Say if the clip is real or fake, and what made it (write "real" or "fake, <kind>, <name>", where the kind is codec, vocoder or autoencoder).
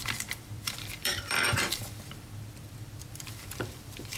fake, vocoder, BigVGAN v2